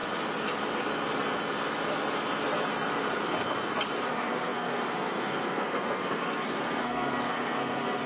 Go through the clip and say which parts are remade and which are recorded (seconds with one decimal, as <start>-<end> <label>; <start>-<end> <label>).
0.0-4.1 recorded; 4.1-8.1 remade